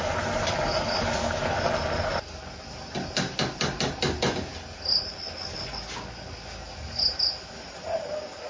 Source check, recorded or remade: recorded